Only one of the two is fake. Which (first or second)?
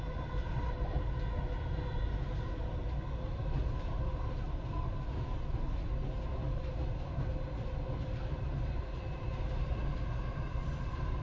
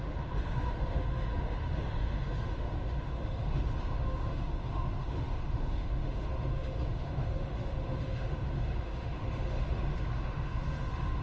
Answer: second